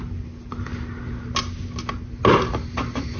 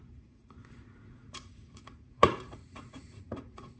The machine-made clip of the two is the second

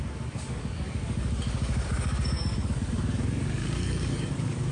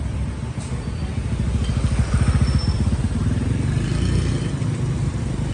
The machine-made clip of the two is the first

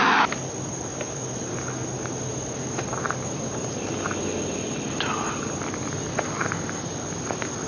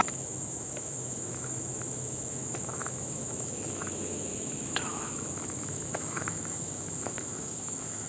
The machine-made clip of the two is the second